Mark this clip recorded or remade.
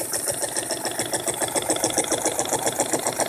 recorded